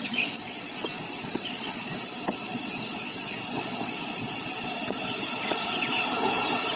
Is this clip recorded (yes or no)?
no